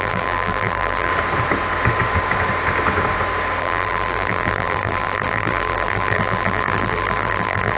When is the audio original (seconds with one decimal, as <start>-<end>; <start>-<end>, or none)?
1.1-3.6